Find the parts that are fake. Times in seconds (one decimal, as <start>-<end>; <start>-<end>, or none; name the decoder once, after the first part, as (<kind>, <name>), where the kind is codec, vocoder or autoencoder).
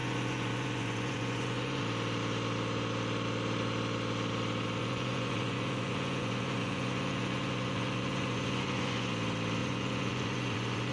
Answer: 0.0-1.8 (vocoder, Vocos); 4.8-9.1; 9.6-10.9